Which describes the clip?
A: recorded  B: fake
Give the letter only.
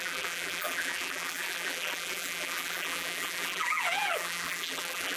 B